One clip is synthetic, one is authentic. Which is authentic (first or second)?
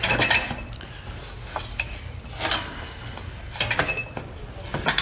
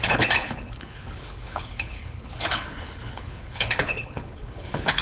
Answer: first